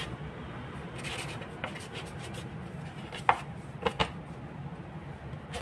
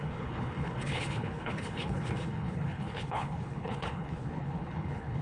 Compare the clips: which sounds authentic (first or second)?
first